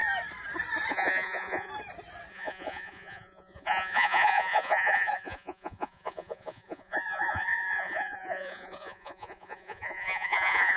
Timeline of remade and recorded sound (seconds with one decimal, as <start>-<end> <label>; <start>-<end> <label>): 0.0-0.9 recorded; 0.9-1.7 remade; 1.7-2.3 recorded; 2.3-10.8 remade